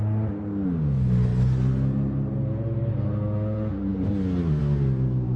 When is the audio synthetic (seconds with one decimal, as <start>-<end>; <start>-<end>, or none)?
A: none